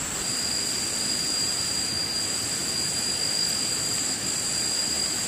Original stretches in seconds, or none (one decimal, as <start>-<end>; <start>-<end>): 0.0-5.3